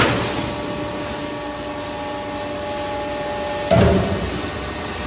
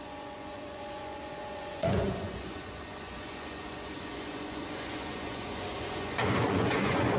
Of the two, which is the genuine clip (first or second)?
first